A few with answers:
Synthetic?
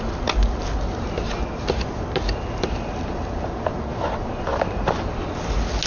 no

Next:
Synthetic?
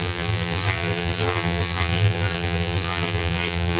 yes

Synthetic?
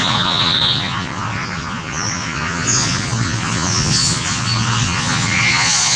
yes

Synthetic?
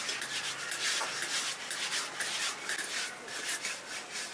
no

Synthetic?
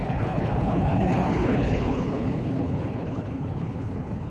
yes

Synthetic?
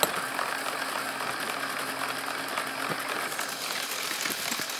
no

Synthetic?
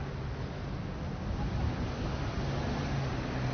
no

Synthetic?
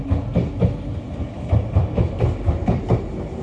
no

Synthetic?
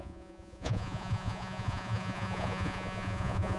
yes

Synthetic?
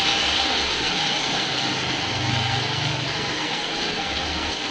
yes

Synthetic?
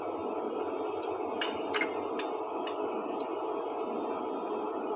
no